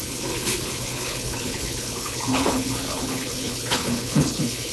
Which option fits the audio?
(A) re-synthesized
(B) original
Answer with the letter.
A